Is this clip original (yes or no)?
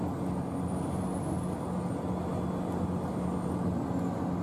yes